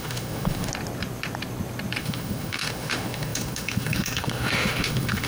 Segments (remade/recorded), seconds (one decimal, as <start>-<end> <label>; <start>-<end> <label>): 0.0-0.7 remade; 0.7-2.0 recorded; 2.0-5.3 remade